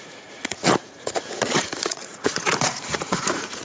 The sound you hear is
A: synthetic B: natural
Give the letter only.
A